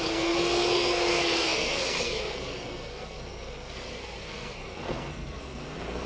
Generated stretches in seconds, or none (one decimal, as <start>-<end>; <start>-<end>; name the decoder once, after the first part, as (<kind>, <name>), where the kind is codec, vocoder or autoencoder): 0.0-6.1 (codec, SNAC)